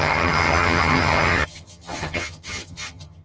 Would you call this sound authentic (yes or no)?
no